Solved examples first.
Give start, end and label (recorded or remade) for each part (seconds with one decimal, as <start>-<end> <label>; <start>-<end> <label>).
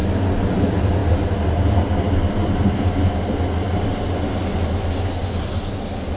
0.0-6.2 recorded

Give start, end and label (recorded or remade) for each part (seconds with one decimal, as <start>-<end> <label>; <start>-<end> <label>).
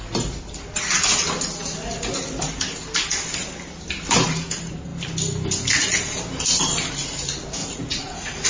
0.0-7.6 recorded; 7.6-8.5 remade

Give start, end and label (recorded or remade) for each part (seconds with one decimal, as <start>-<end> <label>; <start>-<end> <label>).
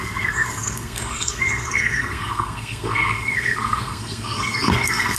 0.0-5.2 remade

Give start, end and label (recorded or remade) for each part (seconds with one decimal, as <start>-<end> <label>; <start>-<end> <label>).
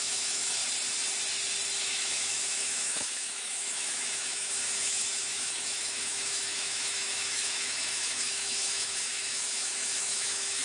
0.0-0.6 remade; 0.6-1.8 recorded; 1.8-10.6 remade